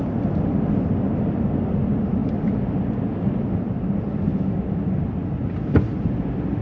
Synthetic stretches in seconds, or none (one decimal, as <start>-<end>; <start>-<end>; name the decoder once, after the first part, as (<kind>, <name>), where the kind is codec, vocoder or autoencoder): 0.0-4.3 (vocoder, BigVGAN v2); 5.3-6.6

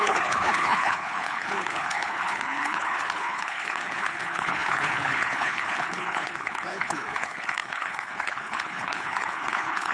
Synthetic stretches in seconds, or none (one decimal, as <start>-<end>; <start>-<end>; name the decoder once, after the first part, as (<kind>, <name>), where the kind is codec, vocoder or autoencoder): 0.0-9.9 (codec, HILCodec)

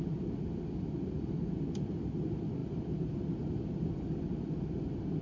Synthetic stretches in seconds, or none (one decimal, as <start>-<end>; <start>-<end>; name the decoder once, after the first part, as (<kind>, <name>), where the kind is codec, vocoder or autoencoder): none